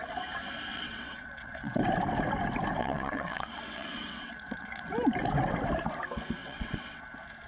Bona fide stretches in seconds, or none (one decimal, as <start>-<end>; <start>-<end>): 0.0-0.7; 1.8-2.8; 4.8-6.4; 7.0-7.5